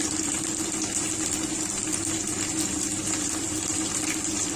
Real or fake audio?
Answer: real